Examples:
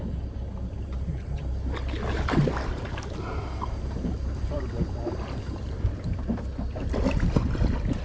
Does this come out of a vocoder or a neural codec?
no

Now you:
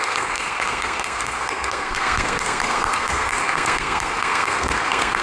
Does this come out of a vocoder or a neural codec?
yes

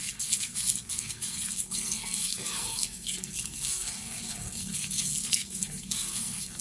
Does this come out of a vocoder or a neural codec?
yes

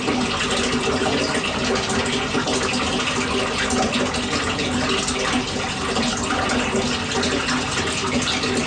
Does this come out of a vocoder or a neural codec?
no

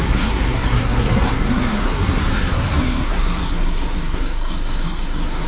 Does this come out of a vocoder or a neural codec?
yes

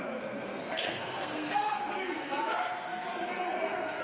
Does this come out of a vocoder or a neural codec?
yes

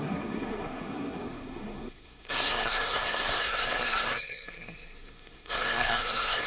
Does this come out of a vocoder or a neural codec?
yes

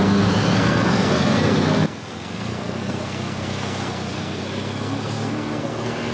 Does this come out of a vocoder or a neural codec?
yes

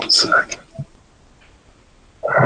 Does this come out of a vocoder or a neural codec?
no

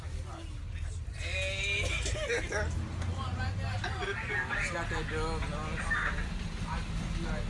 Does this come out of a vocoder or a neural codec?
no